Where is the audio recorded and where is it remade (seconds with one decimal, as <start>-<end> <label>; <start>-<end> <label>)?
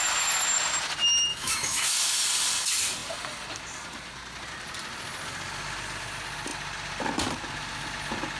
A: 0.0-1.3 recorded; 1.3-1.9 remade; 1.9-8.4 recorded